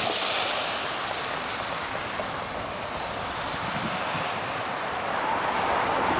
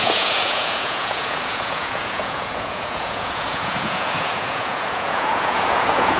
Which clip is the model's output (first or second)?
second